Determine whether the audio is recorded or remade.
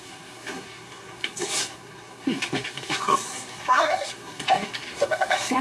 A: remade